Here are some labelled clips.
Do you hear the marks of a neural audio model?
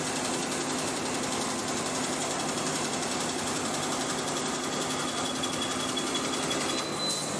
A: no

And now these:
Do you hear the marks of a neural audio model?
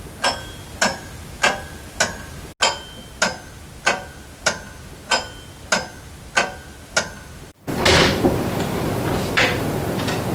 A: no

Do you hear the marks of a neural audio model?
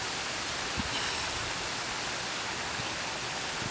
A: no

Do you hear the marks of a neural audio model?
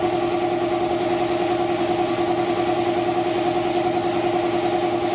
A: no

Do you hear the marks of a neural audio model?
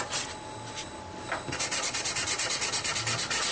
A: no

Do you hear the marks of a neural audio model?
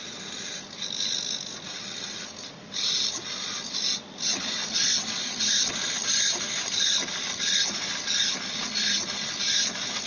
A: no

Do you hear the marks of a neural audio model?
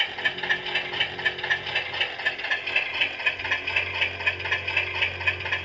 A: no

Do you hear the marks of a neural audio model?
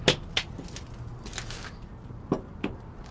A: no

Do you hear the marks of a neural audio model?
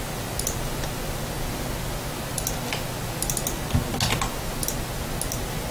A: no